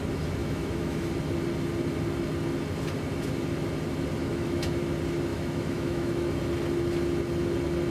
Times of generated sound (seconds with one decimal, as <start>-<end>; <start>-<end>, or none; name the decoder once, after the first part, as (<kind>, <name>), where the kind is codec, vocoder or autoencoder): 0.4-1.1 (autoencoder, DAC-VAE); 4.2-4.8; 5.3-6.4